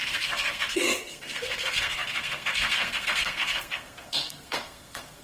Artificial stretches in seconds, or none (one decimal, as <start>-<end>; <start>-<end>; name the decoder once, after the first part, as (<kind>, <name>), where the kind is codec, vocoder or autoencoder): 0.0-5.2 (codec, SNAC)